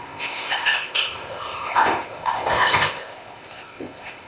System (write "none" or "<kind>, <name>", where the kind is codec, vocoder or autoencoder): codec, ZipCodec